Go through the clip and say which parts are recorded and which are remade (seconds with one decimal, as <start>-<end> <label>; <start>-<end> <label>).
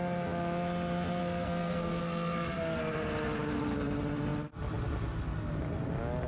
0.0-1.2 recorded; 1.2-2.8 remade; 2.8-6.3 recorded